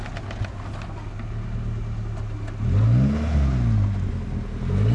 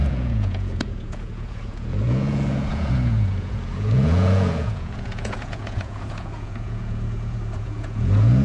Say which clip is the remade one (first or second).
second